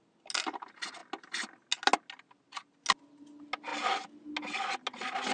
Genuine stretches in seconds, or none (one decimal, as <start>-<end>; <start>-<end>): 0.0-5.3